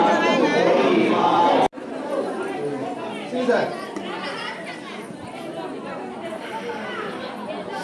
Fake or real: real